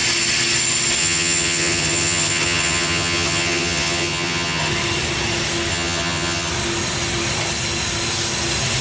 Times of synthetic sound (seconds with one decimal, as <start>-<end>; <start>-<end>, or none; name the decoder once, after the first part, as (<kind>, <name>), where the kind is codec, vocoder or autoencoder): 1.0-4.7 (vocoder, HiFi-GAN); 5.7-6.5